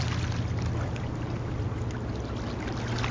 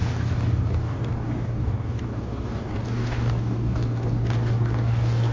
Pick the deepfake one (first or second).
second